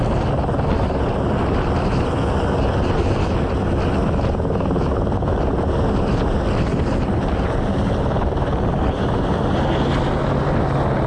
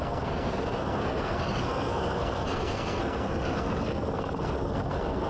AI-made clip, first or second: second